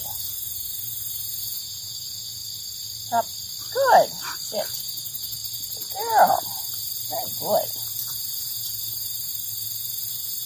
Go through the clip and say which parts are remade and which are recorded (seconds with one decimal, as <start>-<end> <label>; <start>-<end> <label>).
0.0-2.4 remade; 2.4-4.8 recorded; 4.8-5.4 remade; 5.4-8.0 recorded; 8.0-9.3 remade; 9.3-10.1 recorded; 10.1-10.5 remade